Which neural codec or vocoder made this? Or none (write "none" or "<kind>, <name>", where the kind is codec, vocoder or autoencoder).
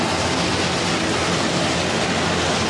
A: none